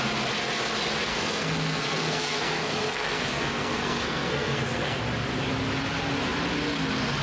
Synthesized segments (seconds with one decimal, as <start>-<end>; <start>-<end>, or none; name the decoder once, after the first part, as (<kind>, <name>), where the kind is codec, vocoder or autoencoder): 1.1-5.0 (codec, SNAC)